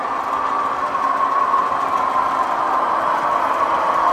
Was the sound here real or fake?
real